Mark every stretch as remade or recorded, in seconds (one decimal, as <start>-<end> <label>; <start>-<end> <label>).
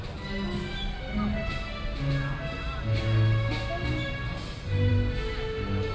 0.0-5.9 recorded